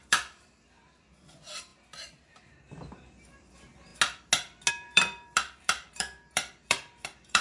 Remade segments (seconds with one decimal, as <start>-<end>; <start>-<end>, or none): 0.0-1.7; 2.5-3.9; 4.7-7.4